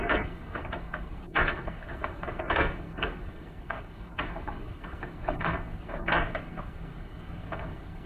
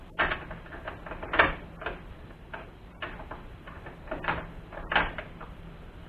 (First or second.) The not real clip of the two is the first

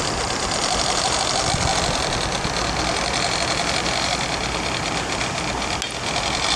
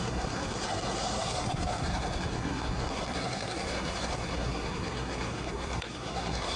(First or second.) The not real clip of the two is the second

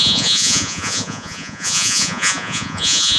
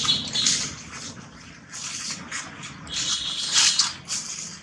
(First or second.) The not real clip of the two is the first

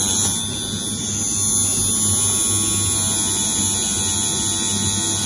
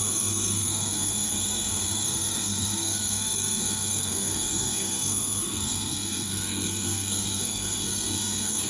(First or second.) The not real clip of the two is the second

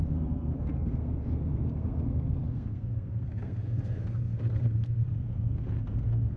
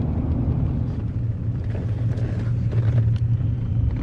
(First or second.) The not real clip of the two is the first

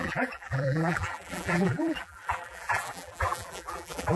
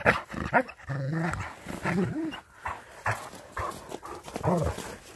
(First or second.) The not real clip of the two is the first